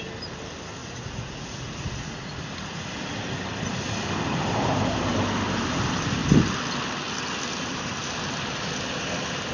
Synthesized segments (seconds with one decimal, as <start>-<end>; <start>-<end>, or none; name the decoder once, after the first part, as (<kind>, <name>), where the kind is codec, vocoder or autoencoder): 0.8-2.9 (vocoder, Vocos)